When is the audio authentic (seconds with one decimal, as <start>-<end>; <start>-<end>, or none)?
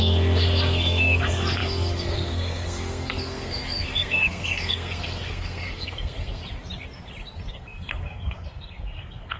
6.4-7.5